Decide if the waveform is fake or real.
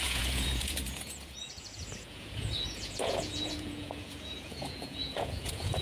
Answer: fake